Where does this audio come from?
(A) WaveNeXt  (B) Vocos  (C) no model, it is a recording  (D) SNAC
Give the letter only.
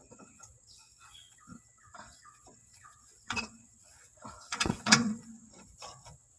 A